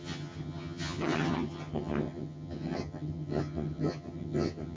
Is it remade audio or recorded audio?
remade